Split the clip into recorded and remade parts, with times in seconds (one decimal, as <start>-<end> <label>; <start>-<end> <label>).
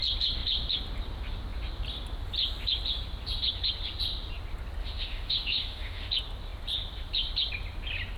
0.0-4.8 recorded; 4.8-6.1 remade; 6.1-8.2 recorded